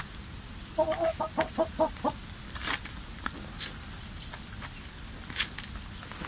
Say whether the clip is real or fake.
real